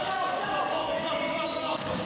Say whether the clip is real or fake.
fake